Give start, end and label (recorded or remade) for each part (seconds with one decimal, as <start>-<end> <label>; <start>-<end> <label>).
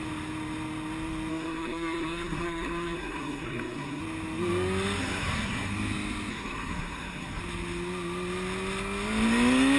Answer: 0.0-1.3 recorded; 1.3-4.0 remade; 4.0-5.0 recorded; 5.0-5.7 remade; 5.7-6.3 recorded; 6.3-7.4 remade; 7.4-9.8 recorded